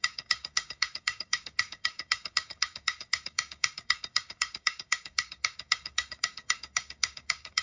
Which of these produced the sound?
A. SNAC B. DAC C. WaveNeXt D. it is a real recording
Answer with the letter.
B